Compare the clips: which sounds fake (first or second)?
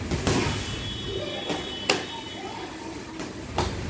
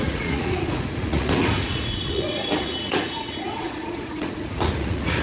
second